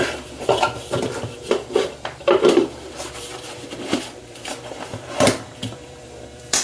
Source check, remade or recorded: remade